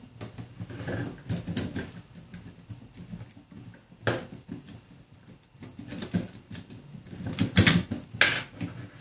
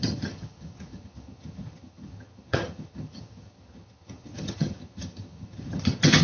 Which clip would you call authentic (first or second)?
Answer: first